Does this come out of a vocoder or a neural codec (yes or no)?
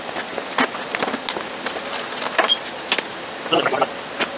no